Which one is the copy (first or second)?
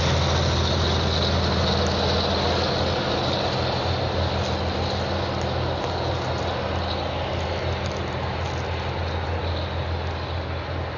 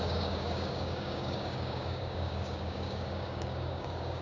second